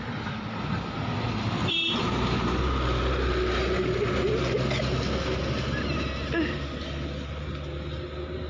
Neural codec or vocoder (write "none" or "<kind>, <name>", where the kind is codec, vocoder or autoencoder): none